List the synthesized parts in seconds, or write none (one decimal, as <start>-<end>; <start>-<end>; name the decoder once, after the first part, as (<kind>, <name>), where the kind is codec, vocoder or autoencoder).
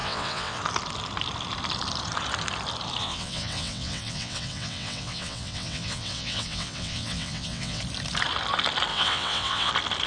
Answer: 0.0-0.6 (vocoder, WaveNeXt); 3.0-7.8; 8.9-9.7